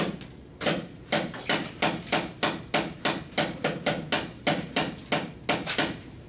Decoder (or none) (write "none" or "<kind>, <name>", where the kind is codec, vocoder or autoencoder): none